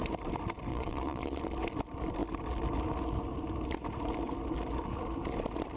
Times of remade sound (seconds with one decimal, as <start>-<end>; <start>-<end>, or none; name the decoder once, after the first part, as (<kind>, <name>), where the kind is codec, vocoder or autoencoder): 0.7-1.4 (vocoder, Vocos)